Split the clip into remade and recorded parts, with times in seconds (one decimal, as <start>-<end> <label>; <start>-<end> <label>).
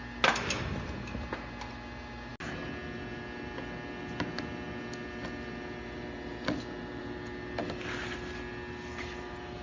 0.0-9.6 recorded